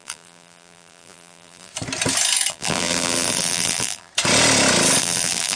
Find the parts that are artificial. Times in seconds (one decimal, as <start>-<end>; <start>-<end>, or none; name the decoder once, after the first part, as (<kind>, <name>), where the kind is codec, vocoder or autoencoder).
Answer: 0.0-1.7 (vocoder, BigVGAN v2); 2.5-4.1; 5.0-5.6